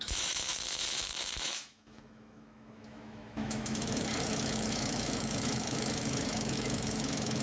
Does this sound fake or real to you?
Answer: fake